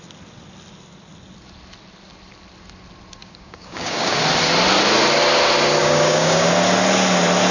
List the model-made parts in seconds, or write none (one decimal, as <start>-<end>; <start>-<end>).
3.2-4.2; 5.8-6.5